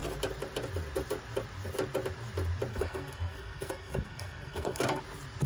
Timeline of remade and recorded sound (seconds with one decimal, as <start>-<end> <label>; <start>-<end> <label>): 0.0-2.7 recorded; 2.7-5.0 remade; 5.0-5.5 recorded